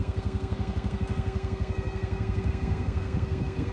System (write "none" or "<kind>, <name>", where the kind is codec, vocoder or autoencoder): codec, SNAC